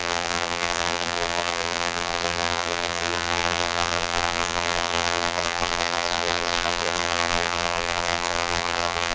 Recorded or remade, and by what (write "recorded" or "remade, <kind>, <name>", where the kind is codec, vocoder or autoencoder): remade, vocoder, BigVGAN v2